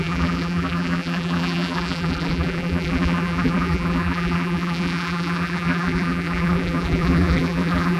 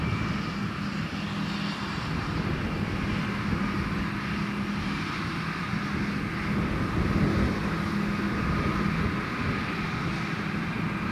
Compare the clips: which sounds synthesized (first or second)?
first